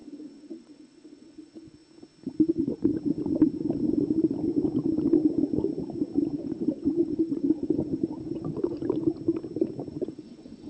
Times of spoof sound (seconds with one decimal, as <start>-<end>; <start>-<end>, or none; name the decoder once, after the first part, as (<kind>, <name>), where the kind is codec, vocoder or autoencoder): 0.0-1.8 (vocoder, Vocos); 2.5-2.9; 6.3-9.1; 9.9-10.7